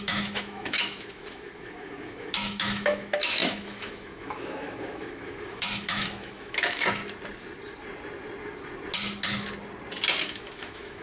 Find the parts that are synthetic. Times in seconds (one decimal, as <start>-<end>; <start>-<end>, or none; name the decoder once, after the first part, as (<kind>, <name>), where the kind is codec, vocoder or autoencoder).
0.0-7.0 (autoencoder, DAC-VAE); 10.2-11.0